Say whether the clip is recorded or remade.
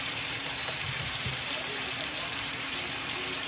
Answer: remade